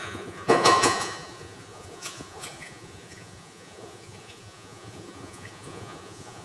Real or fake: fake